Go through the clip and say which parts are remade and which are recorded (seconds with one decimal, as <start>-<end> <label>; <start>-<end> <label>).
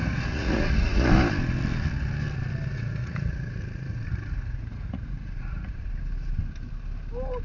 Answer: 0.0-1.1 remade; 1.1-2.7 recorded; 2.7-5.9 remade; 5.9-7.4 recorded